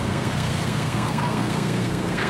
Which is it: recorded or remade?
remade